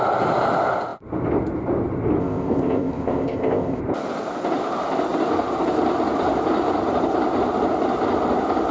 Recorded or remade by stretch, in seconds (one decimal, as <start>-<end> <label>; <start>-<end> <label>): 0.0-2.2 recorded; 2.2-3.8 remade; 3.8-8.7 recorded